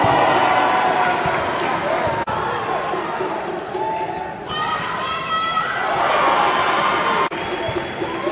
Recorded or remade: recorded